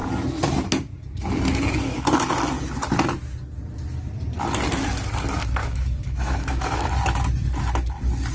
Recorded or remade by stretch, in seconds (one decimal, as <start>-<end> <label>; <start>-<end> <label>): 0.0-5.6 recorded; 5.6-6.9 remade; 6.9-8.3 recorded

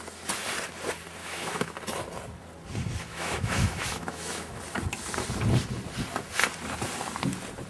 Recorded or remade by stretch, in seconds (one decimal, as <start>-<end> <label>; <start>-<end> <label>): 0.0-1.2 recorded; 1.2-1.7 remade; 1.7-3.1 recorded; 3.1-4.6 remade; 4.6-7.7 recorded

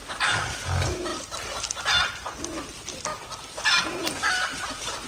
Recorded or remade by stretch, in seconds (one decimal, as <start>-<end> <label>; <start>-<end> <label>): 0.0-3.1 recorded; 3.1-3.6 remade; 3.6-4.0 recorded; 4.0-5.1 remade

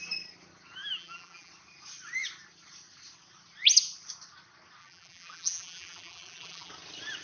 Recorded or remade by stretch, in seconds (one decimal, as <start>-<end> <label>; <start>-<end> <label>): 0.0-0.8 recorded; 0.8-1.5 remade; 1.5-4.8 recorded; 4.8-6.7 remade; 6.7-7.2 recorded

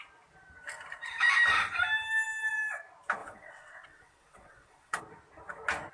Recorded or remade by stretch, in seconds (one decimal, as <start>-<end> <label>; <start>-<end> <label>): 0.0-3.2 recorded; 3.2-5.0 remade; 5.0-5.9 recorded

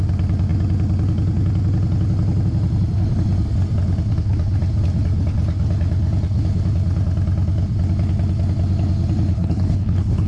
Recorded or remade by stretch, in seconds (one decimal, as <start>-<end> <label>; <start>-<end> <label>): 0.0-9.3 recorded; 9.3-10.3 remade